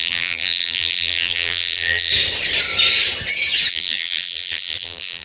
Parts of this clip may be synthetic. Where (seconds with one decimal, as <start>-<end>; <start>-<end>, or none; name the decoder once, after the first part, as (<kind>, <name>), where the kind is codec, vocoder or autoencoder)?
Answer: 0.0-2.1 (vocoder, BigVGAN v2); 3.7-5.2